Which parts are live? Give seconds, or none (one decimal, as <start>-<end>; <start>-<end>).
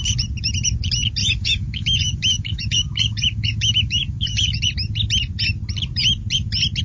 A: 0.0-1.2; 4.6-6.8